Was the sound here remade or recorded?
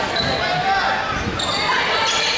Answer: recorded